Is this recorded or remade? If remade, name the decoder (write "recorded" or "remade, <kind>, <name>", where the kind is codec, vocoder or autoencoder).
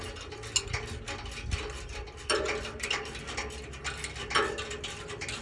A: recorded